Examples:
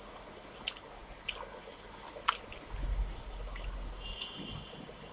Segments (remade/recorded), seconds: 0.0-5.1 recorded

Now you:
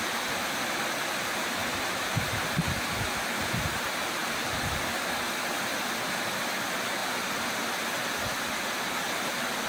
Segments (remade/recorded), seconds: 0.0-1.6 recorded; 1.6-2.8 remade; 2.8-4.2 recorded; 4.2-4.7 remade; 4.7-7.0 recorded; 7.0-7.8 remade; 7.8-9.7 recorded

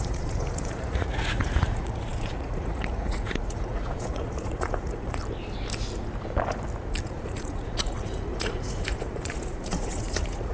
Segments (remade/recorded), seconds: 0.0-5.2 remade; 5.2-7.0 recorded; 7.0-10.5 remade

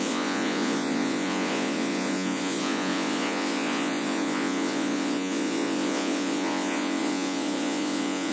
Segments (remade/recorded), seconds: 0.0-8.3 remade

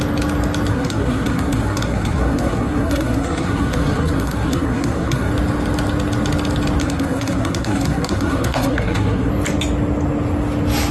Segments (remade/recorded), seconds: 0.0-0.7 recorded; 0.7-5.3 remade; 5.3-6.8 recorded; 6.8-9.3 remade; 9.3-10.9 recorded